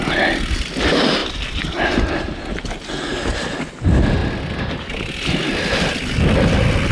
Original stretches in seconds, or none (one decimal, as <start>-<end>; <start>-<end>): 0.0-6.9